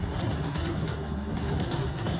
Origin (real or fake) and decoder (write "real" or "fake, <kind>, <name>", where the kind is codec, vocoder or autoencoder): fake, codec, SNAC